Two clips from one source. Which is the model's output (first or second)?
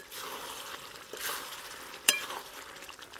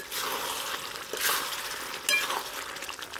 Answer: first